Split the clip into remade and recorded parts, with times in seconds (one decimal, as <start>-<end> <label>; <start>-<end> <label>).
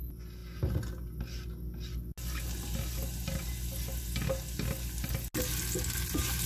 0.0-6.5 recorded